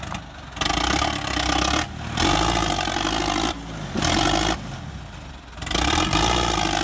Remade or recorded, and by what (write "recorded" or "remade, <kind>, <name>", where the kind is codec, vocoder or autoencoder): recorded